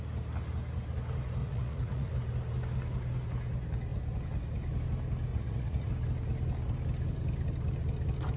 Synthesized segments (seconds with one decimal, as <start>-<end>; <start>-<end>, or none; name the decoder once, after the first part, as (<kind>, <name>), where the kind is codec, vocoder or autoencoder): 1.4-2.1 (vocoder, Vocos); 5.3-5.9